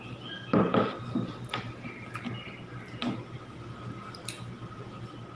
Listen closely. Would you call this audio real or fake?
real